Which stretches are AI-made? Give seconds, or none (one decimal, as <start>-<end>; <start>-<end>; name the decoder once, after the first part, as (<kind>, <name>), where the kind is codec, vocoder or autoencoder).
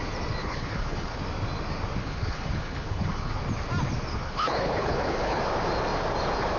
0.4-1.2 (codec, HILCodec); 2.0-3.4; 4.1-5.4